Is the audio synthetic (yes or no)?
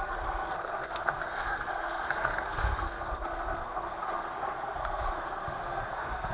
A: yes